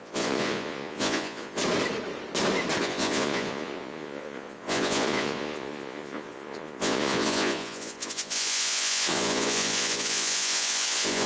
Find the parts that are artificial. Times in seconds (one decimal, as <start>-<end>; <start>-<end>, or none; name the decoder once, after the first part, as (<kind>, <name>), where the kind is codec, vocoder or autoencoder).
0.0-1.6 (vocoder, Vocos); 2.8-11.3